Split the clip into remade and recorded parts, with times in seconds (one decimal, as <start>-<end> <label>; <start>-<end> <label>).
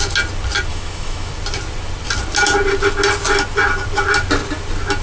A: 0.0-0.7 recorded; 0.7-1.3 remade; 1.3-5.0 recorded